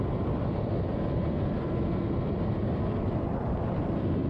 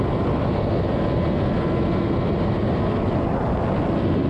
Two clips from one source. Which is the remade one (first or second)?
first